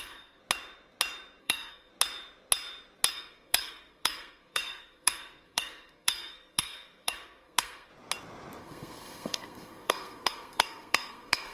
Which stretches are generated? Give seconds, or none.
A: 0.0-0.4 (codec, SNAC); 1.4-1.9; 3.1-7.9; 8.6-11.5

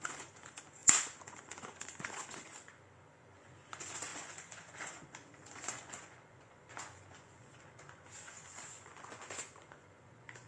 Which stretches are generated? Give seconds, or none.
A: 0.0-10.5 (vocoder, Vocos)

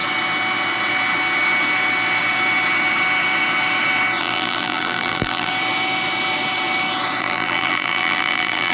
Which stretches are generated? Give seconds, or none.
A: 4.2-5.5 (vocoder, BigVGAN v2); 7.2-8.7

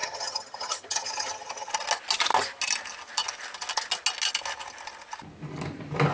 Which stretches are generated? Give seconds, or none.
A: 0.0-1.7 (vocoder, HiFi-GAN)

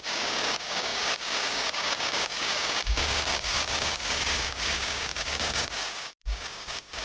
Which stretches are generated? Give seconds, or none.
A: 0.0-7.0 (codec, DAC)

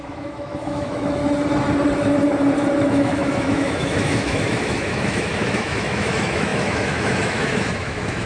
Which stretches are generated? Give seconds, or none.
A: 0.0-1.2 (autoencoder, DAC-VAE); 2.9-8.3

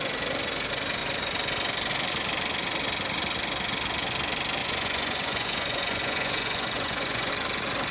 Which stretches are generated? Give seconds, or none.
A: 4.6-7.3 (vocoder, Vocos)

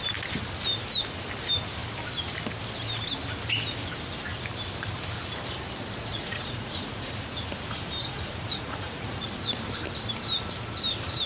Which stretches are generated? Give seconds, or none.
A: 6.1-7.5 (vocoder, Vocos); 8.0-9.3